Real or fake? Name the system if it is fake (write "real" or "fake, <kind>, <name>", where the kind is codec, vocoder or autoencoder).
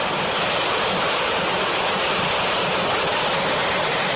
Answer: real